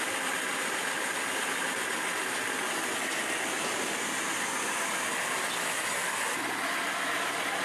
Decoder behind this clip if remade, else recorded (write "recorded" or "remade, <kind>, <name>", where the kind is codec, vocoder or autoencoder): recorded